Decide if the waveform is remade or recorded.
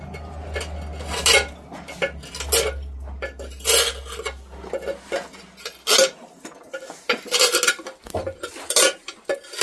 recorded